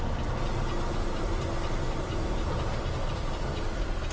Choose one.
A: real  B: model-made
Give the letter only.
A